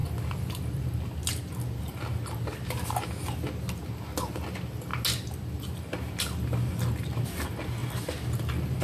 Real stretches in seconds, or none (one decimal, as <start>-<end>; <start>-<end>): 0.0-8.8